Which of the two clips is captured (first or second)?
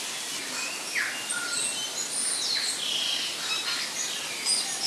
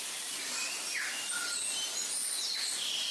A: first